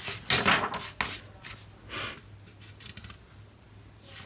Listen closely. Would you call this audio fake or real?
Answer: real